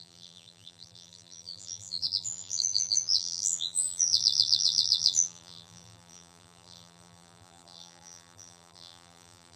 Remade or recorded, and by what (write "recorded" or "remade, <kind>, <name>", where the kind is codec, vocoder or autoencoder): remade, vocoder, BigVGAN v2